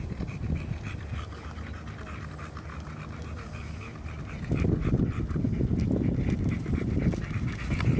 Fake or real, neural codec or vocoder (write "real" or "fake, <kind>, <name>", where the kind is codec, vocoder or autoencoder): real